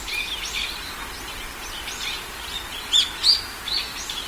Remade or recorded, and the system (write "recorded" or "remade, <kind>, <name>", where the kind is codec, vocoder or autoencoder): recorded